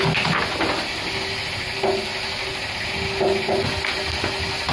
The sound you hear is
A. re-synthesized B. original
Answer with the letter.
B